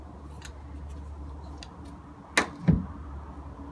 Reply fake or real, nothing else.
real